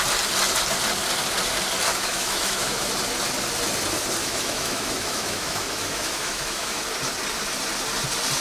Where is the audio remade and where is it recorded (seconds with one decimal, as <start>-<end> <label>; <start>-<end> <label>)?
0.0-1.9 recorded; 1.9-2.9 remade; 2.9-4.2 recorded; 4.2-6.8 remade; 6.8-8.4 recorded

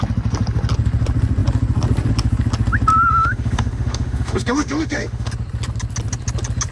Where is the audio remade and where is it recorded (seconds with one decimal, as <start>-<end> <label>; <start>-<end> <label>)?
0.0-3.1 recorded; 3.1-5.3 remade; 5.3-6.7 recorded

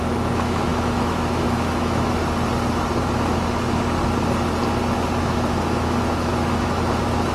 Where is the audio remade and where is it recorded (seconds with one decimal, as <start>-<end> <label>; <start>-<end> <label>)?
0.0-2.2 remade; 2.2-5.2 recorded; 5.2-7.3 remade

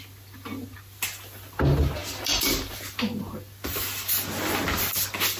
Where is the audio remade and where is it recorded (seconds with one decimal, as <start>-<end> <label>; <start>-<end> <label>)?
0.0-5.4 recorded

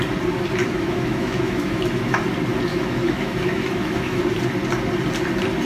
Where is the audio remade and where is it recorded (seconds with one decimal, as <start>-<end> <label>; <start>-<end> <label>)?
0.0-0.6 recorded; 0.6-2.2 remade; 2.2-2.7 recorded; 2.7-4.2 remade; 4.2-5.6 recorded

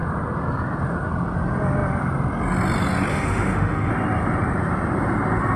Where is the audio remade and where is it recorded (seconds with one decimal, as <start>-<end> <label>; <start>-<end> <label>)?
0.0-3.1 recorded; 3.1-3.9 remade; 3.9-5.6 recorded

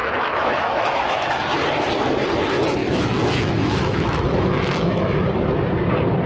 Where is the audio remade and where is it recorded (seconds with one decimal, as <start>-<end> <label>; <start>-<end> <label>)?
0.0-1.3 remade; 1.3-2.8 recorded; 2.8-5.2 remade; 5.2-6.3 recorded

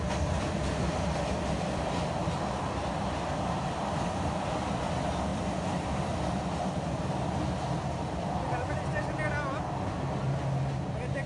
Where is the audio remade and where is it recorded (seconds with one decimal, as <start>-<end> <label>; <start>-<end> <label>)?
0.0-11.3 recorded